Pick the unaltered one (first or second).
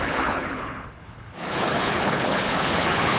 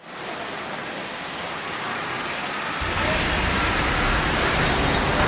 second